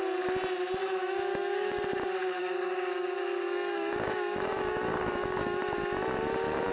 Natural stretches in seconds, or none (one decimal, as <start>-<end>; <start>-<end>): 0.0-0.8; 1.8-2.4; 5.6-6.7